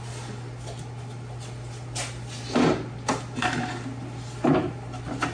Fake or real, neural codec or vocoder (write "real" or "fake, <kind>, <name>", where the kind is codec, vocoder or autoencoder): real